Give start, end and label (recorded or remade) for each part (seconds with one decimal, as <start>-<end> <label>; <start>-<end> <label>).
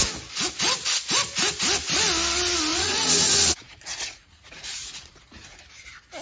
0.0-2.7 recorded; 2.7-5.6 remade; 5.6-6.2 recorded